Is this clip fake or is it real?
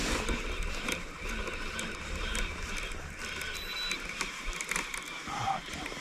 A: real